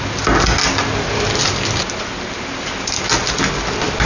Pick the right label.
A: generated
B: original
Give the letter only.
B